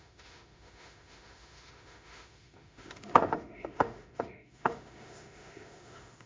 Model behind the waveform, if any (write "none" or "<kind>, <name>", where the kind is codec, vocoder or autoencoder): autoencoder, DAC-VAE